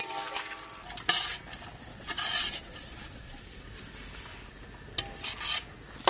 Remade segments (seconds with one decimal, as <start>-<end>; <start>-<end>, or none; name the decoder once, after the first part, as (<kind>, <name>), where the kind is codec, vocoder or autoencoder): 1.9-3.4 (vocoder, Vocos)